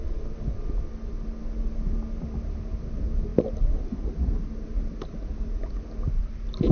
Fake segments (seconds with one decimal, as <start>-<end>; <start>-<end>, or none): none